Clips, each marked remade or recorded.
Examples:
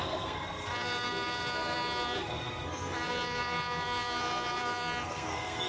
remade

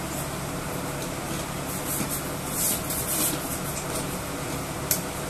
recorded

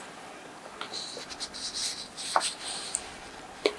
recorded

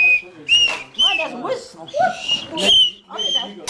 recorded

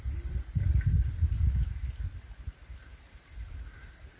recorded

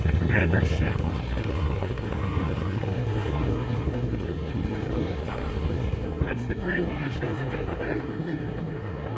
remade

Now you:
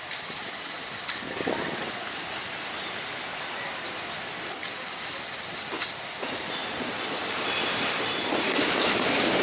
remade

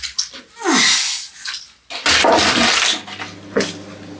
recorded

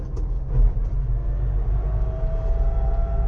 recorded